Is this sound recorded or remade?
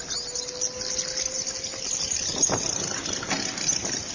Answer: recorded